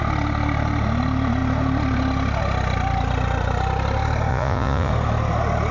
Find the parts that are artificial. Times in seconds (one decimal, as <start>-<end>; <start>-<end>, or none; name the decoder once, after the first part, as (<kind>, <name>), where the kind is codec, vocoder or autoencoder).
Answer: 4.3-4.9 (vocoder, Vocos)